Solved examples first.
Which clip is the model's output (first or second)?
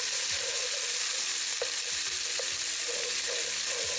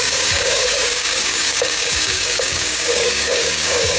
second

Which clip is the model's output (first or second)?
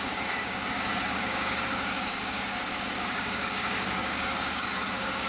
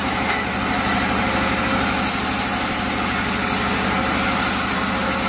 first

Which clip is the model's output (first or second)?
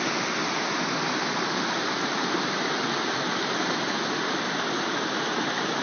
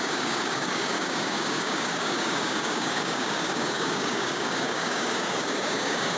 second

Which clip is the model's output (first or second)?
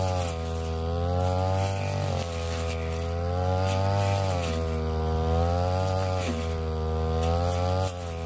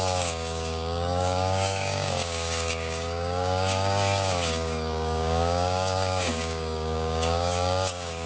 second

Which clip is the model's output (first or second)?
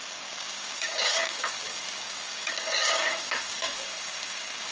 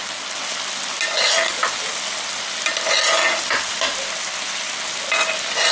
first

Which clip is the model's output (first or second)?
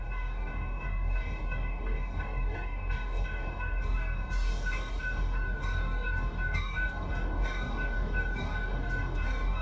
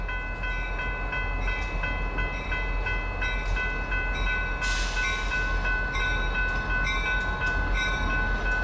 first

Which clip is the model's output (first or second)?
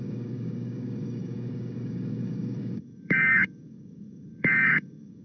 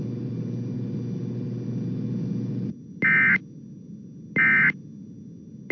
first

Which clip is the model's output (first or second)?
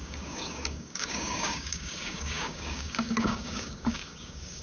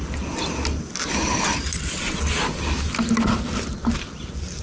first